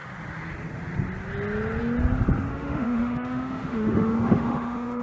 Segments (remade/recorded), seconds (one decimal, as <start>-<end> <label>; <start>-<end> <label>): 0.0-2.5 recorded; 2.5-5.0 remade